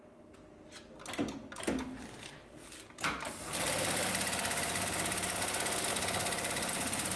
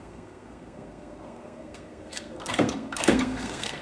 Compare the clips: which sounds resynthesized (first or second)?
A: second